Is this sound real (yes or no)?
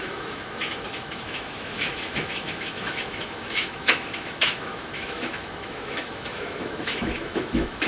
no